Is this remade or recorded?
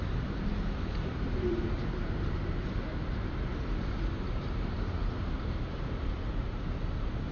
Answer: remade